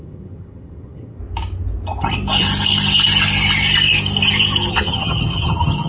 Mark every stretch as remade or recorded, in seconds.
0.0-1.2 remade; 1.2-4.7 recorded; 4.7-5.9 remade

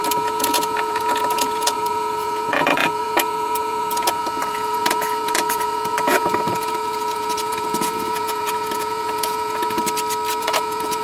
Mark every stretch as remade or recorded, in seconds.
0.0-9.8 remade; 9.8-10.4 recorded; 10.4-11.0 remade

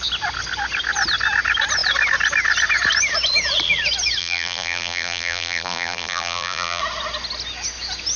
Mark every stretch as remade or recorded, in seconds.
0.0-4.2 recorded; 4.2-6.8 remade; 6.8-8.2 recorded

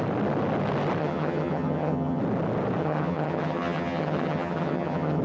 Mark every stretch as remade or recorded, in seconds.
0.0-1.0 recorded; 1.0-2.2 remade; 2.2-2.8 recorded; 2.8-5.2 remade